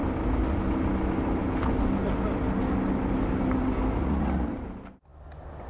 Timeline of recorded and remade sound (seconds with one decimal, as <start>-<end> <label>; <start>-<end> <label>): 0.0-4.0 recorded; 4.0-4.5 remade; 4.5-5.7 recorded